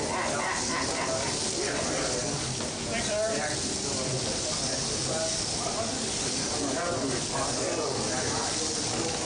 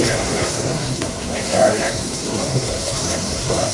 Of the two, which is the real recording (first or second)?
first